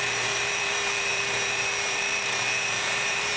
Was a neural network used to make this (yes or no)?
yes